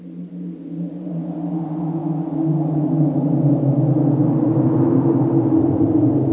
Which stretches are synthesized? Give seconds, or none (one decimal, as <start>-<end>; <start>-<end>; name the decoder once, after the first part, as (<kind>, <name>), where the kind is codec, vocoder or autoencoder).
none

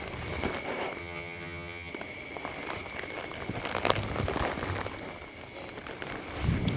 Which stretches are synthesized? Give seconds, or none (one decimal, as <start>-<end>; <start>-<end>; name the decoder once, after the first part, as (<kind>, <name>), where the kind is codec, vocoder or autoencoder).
1.0-1.9 (vocoder, HiFi-GAN)

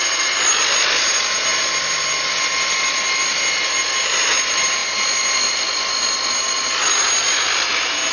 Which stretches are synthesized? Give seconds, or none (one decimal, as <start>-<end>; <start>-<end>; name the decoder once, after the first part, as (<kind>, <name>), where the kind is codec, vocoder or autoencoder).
none